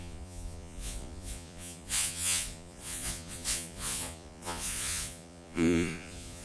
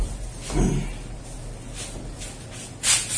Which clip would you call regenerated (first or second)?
first